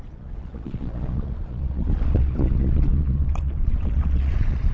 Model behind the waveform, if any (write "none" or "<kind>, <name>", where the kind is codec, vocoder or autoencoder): vocoder, Vocos